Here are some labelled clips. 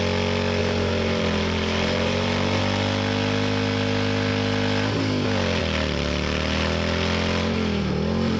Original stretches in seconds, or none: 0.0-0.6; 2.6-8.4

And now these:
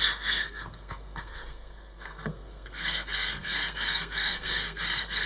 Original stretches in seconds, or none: none

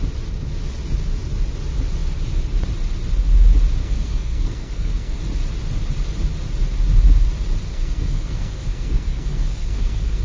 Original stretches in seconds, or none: 0.0-3.8; 5.2-7.7